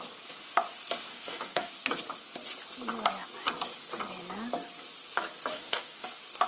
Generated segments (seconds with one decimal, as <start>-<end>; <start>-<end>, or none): 1.1-1.7; 5.5-6.1